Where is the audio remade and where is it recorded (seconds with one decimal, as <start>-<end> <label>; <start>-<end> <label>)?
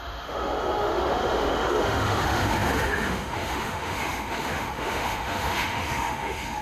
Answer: 0.0-6.6 remade